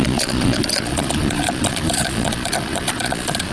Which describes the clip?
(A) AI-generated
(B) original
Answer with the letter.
A